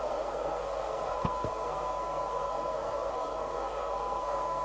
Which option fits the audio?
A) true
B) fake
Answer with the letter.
B